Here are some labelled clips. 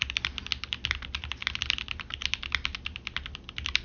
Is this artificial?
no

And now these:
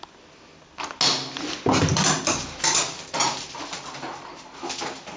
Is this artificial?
no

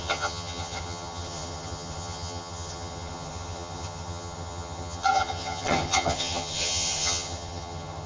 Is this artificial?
yes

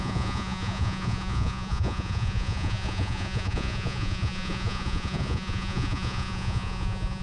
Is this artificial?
yes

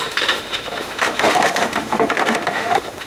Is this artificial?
yes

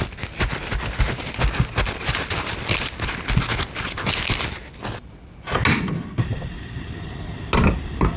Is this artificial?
no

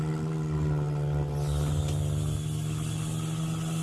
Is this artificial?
no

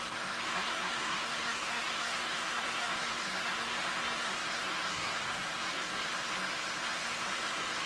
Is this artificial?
yes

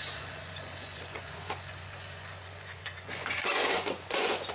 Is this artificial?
yes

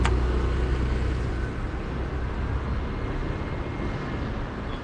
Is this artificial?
no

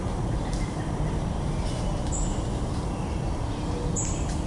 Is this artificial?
no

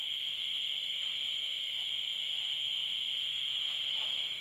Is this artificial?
yes